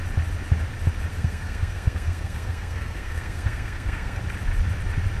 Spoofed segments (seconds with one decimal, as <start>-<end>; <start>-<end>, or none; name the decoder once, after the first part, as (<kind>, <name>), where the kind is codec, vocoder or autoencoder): 1.1-4.2 (codec, SNAC)